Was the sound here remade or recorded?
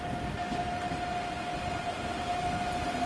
recorded